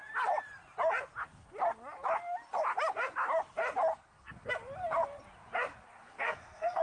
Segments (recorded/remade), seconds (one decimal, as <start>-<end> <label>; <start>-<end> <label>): 0.0-3.9 recorded; 3.9-4.5 remade; 4.5-6.0 recorded; 6.0-6.8 remade

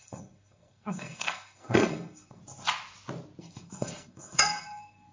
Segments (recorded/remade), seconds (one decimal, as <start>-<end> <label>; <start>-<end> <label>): 0.0-2.4 remade; 2.4-3.4 recorded; 3.4-5.1 remade

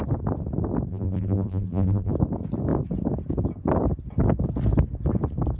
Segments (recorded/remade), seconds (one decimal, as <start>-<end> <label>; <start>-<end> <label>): 0.0-0.9 recorded; 0.9-2.1 remade; 2.1-5.6 recorded

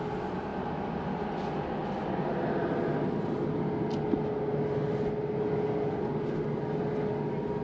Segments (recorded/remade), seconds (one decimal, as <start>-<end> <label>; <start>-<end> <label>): 0.0-7.6 recorded

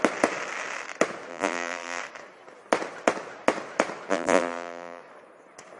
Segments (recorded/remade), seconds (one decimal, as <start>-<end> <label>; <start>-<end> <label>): 0.0-1.3 recorded; 1.3-2.0 remade; 2.0-4.1 recorded; 4.1-5.0 remade; 5.0-5.8 recorded

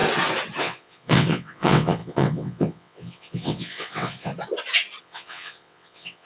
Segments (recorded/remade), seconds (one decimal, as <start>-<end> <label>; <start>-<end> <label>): 0.0-0.6 recorded; 0.6-4.3 remade; 4.3-5.0 recorded; 5.0-6.3 remade

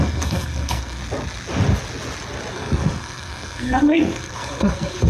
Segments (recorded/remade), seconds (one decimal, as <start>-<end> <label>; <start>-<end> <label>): 0.0-1.0 remade; 1.0-2.5 recorded; 2.5-5.1 remade

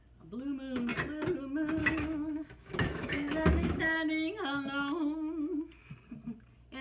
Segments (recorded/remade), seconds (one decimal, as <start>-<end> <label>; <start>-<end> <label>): 0.0-1.8 recorded; 1.8-3.8 remade; 3.8-5.0 recorded; 5.0-5.9 remade; 5.9-6.8 recorded